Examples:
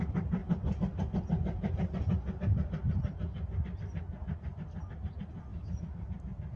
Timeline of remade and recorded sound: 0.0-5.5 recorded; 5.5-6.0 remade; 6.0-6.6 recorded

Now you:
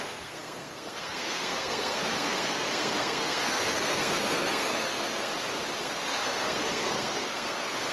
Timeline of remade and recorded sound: 0.0-5.3 remade; 5.3-5.8 recorded; 5.8-7.9 remade

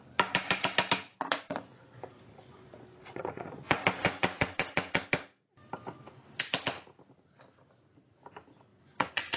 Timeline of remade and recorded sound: 0.0-1.1 recorded; 1.1-5.0 remade; 5.0-8.7 recorded; 8.7-9.4 remade